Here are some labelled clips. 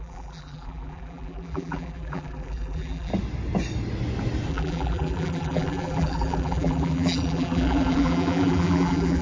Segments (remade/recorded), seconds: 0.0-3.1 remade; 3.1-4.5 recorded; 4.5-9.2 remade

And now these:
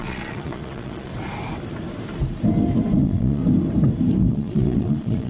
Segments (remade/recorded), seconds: 0.0-1.1 remade; 1.1-3.0 recorded; 3.0-3.4 remade; 3.4-4.3 recorded; 4.3-5.3 remade

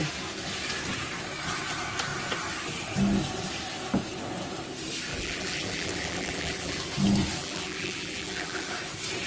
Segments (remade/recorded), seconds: 0.0-5.1 recorded; 5.1-6.8 remade; 6.8-7.4 recorded; 7.4-8.7 remade; 8.7-9.3 recorded

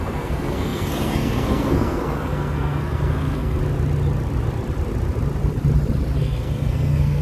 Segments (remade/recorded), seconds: 0.0-3.6 remade; 3.6-6.2 recorded; 6.2-7.2 remade

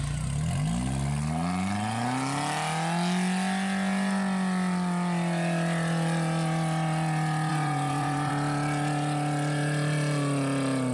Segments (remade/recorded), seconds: 0.0-7.5 recorded; 7.5-8.3 remade; 8.3-10.9 recorded

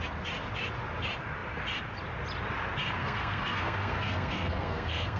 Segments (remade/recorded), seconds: 0.0-3.0 recorded; 3.0-5.2 remade